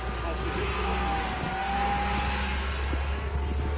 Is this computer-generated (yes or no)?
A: no